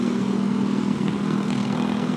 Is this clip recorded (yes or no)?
no